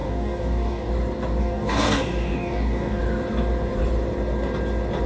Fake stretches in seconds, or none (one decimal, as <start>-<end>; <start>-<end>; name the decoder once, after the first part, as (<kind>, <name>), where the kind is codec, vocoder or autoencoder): 0.0-0.9 (codec, DAC); 1.4-3.0